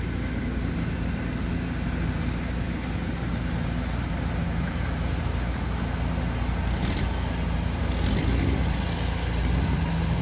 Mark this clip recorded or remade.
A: recorded